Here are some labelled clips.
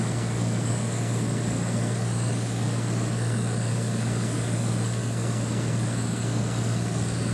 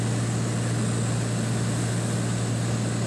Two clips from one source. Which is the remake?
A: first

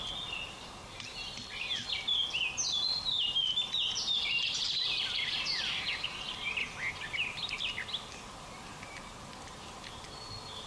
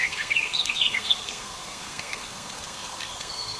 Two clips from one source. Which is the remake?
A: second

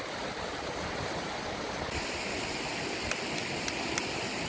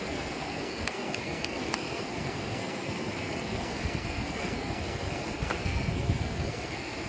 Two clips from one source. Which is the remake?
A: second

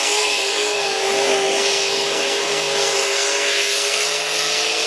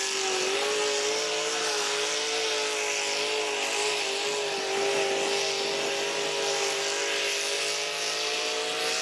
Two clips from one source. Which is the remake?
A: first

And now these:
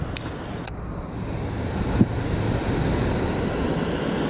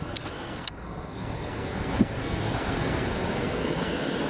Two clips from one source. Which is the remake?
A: second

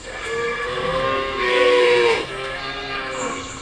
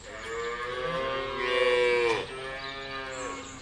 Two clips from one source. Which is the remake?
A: first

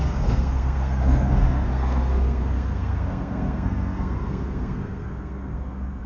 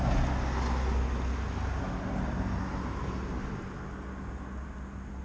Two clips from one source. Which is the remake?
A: first